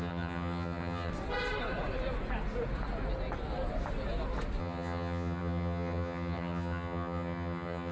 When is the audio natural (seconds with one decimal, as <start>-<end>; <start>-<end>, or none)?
1.1-4.6